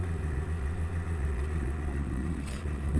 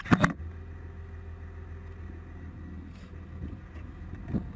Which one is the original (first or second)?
second